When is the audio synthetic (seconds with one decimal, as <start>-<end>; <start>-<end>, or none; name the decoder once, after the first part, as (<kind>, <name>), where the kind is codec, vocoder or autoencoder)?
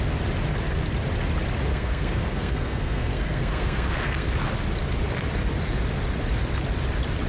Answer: 1.7-4.3 (codec, SNAC)